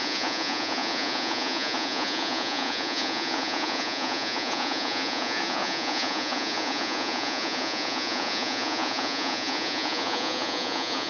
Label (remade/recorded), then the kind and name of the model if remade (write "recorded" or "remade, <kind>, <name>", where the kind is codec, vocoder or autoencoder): remade, vocoder, Vocos